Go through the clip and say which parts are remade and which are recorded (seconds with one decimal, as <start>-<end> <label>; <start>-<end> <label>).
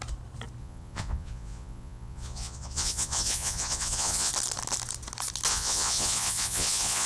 0.0-0.6 recorded; 0.6-4.3 remade; 4.3-5.5 recorded; 5.5-7.1 remade